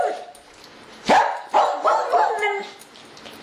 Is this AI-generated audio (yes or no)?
no